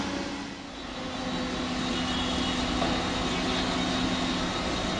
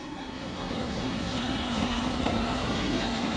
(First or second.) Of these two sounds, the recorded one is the first